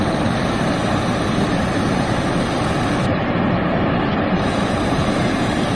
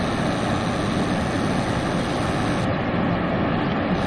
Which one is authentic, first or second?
second